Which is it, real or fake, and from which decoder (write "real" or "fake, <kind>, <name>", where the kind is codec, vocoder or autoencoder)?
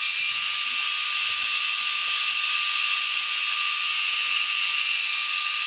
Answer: fake, vocoder, Vocos